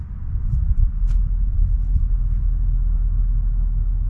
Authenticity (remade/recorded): recorded